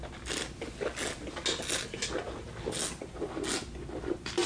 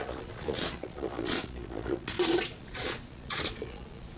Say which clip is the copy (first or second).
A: second